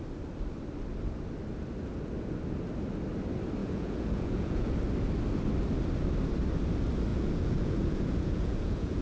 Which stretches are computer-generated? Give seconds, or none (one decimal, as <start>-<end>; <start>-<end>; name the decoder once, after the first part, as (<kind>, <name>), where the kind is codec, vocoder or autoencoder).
3.6-4.7 (vocoder, Vocos); 7.1-9.0